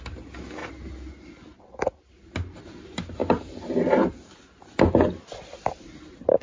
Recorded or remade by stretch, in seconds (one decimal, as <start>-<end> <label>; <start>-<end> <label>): 0.0-6.4 recorded